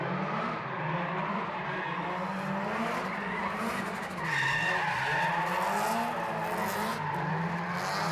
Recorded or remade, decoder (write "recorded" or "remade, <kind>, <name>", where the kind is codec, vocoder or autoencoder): recorded